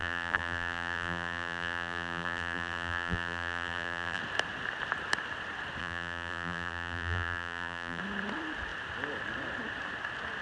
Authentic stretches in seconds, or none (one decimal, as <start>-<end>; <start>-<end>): 4.2-5.8; 8.0-10.4